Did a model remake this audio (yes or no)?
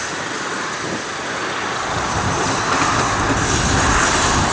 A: no